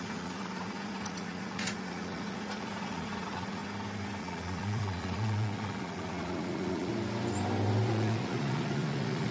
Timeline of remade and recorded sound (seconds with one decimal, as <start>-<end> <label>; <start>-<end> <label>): 0.0-3.6 remade; 3.6-4.2 recorded; 4.2-6.9 remade; 6.9-7.9 recorded; 7.9-9.3 remade